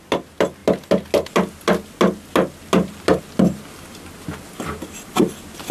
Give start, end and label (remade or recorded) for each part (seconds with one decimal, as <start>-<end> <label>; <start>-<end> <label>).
0.0-5.7 recorded